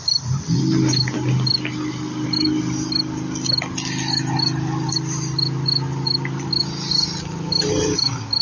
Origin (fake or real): real